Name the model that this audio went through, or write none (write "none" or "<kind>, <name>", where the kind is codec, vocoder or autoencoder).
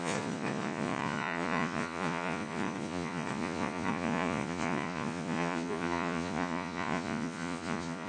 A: vocoder, Vocos